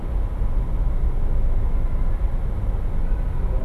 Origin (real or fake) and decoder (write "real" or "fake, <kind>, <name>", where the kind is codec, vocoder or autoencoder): real